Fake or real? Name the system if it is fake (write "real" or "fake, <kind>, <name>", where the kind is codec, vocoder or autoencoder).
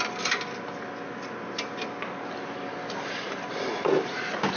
real